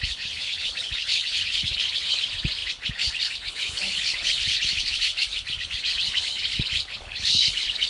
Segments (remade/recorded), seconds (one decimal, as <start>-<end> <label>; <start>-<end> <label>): 0.0-7.9 remade